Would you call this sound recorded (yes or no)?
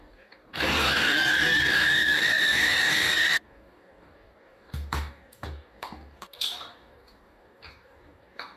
no